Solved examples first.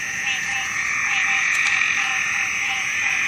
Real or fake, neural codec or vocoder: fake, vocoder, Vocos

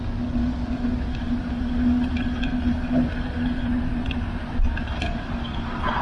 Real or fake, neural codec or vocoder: real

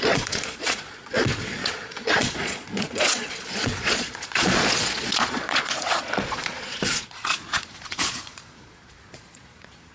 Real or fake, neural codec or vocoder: fake, vocoder, Vocos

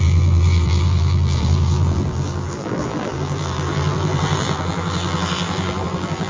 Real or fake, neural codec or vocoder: fake, vocoder, BigVGAN v2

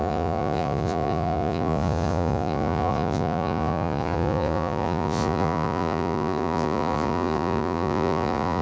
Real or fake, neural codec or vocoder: fake, vocoder, Vocos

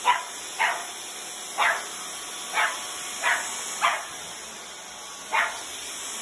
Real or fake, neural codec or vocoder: real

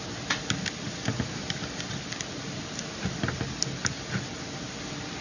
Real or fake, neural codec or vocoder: real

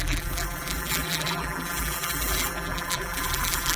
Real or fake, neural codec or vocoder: fake, vocoder, BigVGAN v2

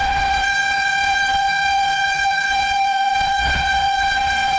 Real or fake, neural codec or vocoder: fake, vocoder, Vocos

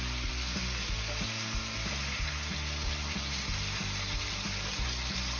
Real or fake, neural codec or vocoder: real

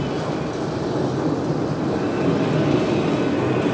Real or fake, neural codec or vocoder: real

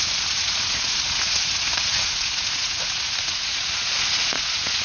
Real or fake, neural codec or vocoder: fake, vocoder, Vocos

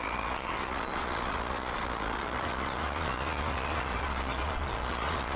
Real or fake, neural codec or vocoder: fake, vocoder, Vocos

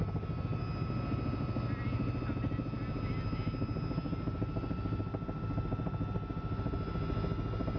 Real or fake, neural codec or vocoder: real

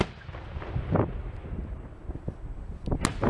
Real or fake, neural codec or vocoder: real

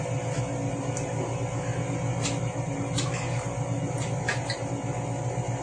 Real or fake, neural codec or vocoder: real